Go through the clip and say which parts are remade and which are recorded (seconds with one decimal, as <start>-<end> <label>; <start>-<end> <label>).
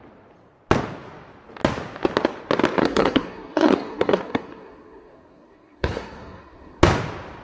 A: 0.0-2.8 recorded; 2.8-6.8 remade; 6.8-7.4 recorded